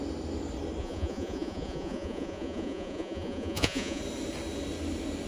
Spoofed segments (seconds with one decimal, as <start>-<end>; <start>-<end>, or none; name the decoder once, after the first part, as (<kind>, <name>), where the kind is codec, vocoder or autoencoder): 0.8-4.0 (vocoder, Vocos)